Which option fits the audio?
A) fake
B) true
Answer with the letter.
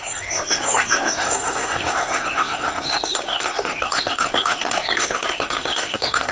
A